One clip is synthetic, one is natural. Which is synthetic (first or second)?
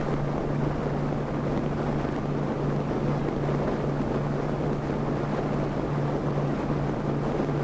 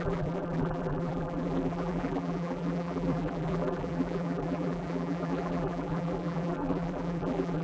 second